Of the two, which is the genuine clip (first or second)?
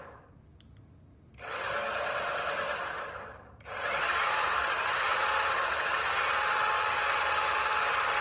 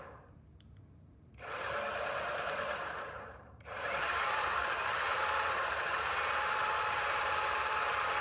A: first